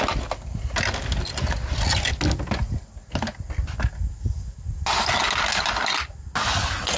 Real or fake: real